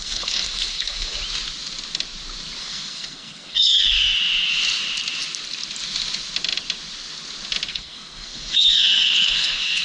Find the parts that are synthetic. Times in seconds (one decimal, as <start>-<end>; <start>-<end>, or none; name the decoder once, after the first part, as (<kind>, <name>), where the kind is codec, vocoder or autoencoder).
0.0-1.2 (codec, SNAC); 2.6-4.0; 7.7-9.8